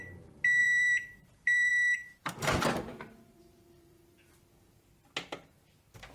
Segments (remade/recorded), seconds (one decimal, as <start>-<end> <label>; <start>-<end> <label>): 0.0-0.6 recorded; 0.6-1.7 remade; 1.7-2.2 recorded; 2.2-4.8 remade; 4.8-6.1 recorded

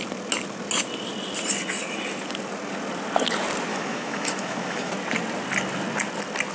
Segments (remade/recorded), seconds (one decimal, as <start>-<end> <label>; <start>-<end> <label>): 0.0-3.7 recorded; 3.7-4.9 remade; 4.9-6.5 recorded

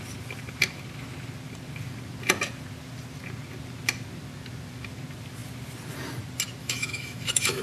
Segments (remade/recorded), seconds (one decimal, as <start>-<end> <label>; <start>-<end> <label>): 0.0-6.6 recorded; 6.6-7.6 remade

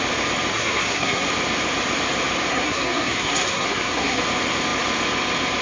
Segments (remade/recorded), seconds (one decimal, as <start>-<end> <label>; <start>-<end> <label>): 0.0-0.5 recorded; 0.5-1.3 remade; 1.3-2.5 recorded; 2.5-4.2 remade; 4.2-5.6 recorded

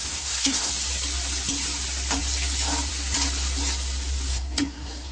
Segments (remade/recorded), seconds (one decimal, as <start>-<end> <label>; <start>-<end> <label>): 0.0-0.7 remade; 0.7-4.3 recorded; 4.3-5.1 remade

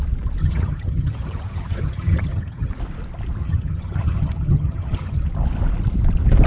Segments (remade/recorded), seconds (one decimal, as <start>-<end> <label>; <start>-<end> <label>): 0.0-0.4 recorded; 0.4-2.7 remade; 2.7-3.4 recorded; 3.4-5.2 remade; 5.2-6.5 recorded